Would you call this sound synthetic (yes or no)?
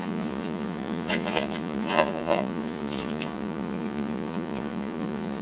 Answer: yes